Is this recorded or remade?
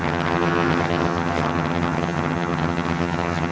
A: remade